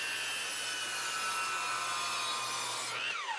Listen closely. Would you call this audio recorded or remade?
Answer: recorded